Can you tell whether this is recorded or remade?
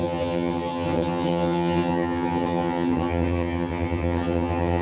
remade